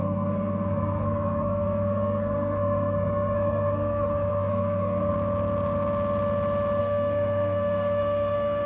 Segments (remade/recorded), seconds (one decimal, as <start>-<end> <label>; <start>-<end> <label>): 0.0-5.1 remade; 5.1-6.8 recorded; 6.8-8.7 remade